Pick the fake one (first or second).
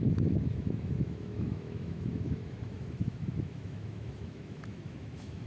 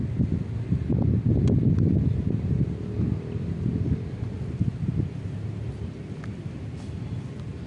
first